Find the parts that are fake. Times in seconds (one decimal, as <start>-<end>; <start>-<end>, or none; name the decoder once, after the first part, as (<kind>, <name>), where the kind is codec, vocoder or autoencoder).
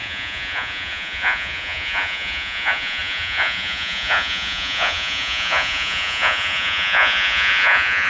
0.0-8.1 (vocoder, Vocos)